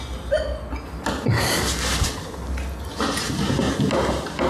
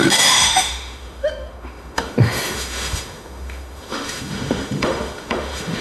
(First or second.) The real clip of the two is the first